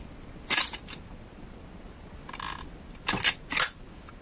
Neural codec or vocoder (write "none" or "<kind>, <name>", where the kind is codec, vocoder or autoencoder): none